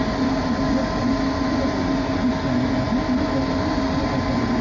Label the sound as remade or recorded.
recorded